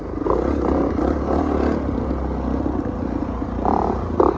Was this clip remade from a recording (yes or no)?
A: no